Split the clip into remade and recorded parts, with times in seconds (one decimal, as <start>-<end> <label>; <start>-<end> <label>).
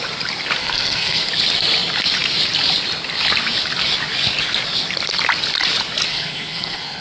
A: 0.0-0.6 recorded; 0.6-1.3 remade; 1.3-6.1 recorded; 6.1-7.0 remade